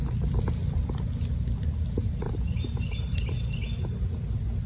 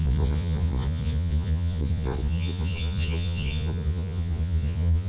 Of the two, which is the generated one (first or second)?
second